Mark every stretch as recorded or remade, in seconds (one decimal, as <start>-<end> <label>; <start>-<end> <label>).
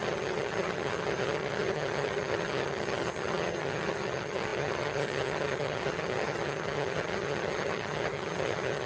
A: 0.0-8.9 remade